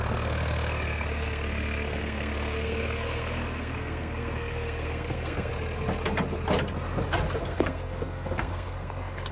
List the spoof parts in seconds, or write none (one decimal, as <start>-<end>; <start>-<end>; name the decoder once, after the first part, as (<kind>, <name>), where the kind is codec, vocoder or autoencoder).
0.0-5.5 (codec, SNAC); 7.4-9.3